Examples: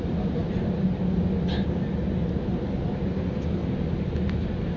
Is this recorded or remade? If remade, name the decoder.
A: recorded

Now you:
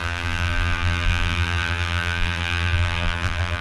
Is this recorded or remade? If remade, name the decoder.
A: remade, vocoder, BigVGAN v2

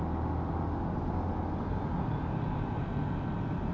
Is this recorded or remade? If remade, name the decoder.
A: recorded